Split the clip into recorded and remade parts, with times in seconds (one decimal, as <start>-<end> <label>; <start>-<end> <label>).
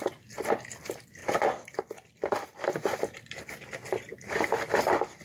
0.0-1.2 recorded; 1.2-3.4 remade; 3.4-4.1 recorded; 4.1-5.2 remade